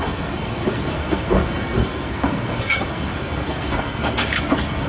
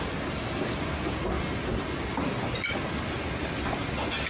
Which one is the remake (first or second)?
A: first